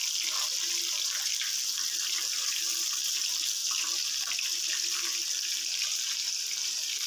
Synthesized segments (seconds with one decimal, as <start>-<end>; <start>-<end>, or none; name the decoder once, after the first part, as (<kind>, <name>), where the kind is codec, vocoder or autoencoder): none